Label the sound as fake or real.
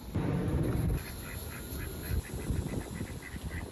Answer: real